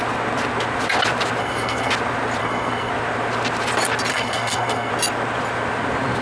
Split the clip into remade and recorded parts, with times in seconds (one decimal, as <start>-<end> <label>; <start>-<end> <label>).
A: 0.0-1.4 recorded; 1.4-1.9 remade; 1.9-2.4 recorded; 2.4-2.9 remade; 2.9-4.1 recorded; 4.1-4.9 remade; 4.9-6.2 recorded